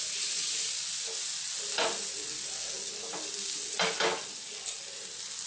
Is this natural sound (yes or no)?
yes